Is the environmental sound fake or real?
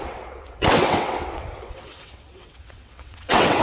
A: fake